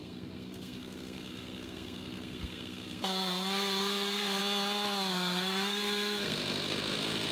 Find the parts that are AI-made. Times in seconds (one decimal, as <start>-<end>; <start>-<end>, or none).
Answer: 0.0-4.4; 5.1-7.3